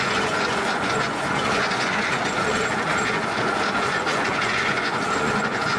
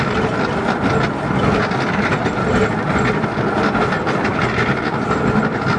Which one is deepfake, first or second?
first